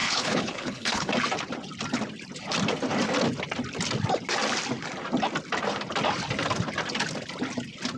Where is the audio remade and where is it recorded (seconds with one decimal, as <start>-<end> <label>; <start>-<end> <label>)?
0.0-1.1 remade; 1.1-8.0 recorded